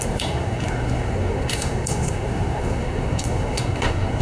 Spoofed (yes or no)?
yes